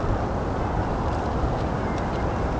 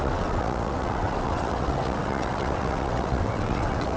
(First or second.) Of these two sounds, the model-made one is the second